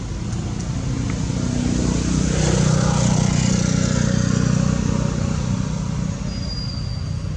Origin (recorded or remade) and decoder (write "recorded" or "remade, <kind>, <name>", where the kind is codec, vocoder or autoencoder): recorded